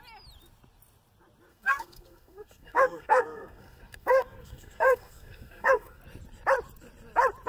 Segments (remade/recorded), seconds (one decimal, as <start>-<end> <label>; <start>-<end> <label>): 0.0-1.5 recorded; 1.5-6.0 remade; 6.0-7.5 recorded